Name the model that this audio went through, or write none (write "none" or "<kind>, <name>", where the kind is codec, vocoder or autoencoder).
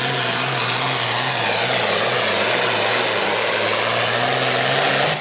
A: none